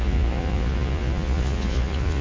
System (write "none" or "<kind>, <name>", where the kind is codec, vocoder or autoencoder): vocoder, Vocos